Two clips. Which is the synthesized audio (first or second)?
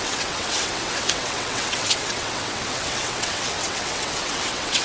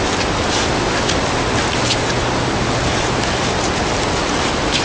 first